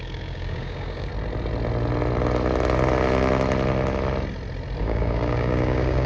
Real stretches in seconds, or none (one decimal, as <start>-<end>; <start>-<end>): 1.1-4.8